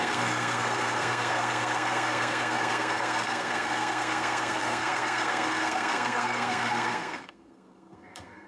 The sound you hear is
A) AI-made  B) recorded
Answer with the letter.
A